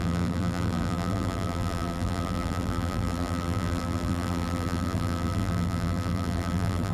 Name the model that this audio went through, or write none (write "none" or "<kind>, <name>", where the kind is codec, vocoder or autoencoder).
vocoder, BigVGAN v2